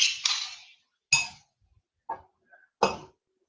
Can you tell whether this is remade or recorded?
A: recorded